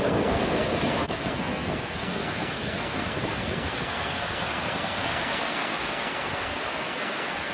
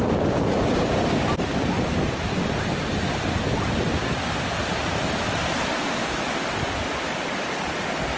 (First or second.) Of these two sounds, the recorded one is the second